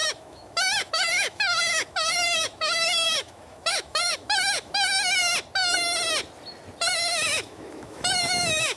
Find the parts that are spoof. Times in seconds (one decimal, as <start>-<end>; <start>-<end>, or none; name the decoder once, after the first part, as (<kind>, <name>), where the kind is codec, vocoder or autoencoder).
0.0-5.2 (autoencoder, DAC-VAE); 6.9-8.8